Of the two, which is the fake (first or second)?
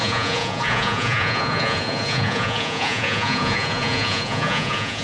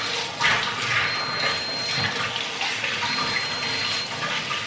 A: first